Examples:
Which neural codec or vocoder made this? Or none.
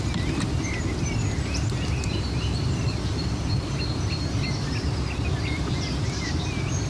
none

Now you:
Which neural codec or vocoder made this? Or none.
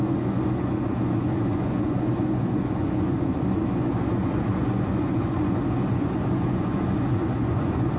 vocoder, Vocos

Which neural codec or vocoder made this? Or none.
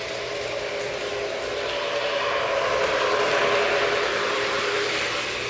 none